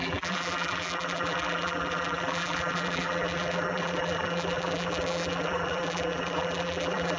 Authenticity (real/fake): fake